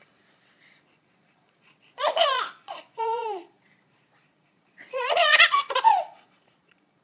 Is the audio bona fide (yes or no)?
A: no